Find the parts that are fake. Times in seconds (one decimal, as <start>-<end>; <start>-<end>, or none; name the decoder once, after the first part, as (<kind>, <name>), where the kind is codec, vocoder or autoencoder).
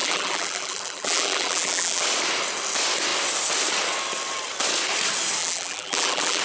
0.0-2.0 (vocoder, BigVGAN v2); 5.4-6.4